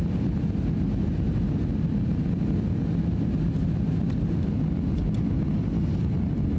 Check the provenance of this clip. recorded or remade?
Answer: recorded